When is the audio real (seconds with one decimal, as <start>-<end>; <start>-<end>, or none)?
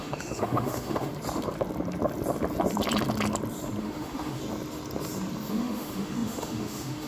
1.1-3.8; 4.4-5.5